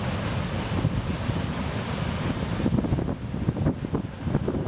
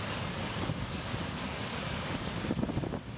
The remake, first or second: second